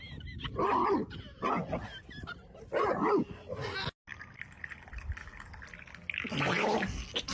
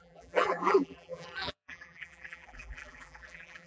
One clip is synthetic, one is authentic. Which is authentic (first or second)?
first